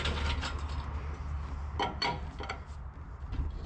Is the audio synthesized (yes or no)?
no